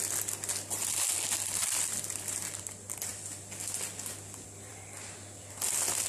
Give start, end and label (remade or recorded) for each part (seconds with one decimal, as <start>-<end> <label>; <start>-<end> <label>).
0.0-6.1 recorded